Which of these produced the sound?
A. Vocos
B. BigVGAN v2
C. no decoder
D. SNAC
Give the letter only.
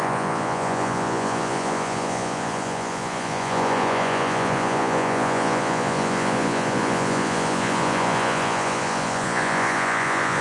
A